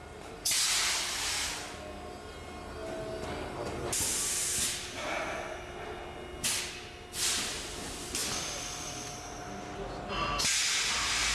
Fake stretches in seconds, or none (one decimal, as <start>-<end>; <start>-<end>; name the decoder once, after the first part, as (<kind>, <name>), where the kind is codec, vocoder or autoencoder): none